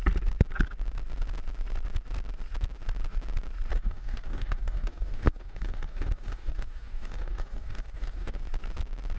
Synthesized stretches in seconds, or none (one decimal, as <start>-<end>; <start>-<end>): 3.7-8.4